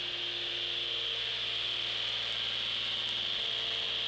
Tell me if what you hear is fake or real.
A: real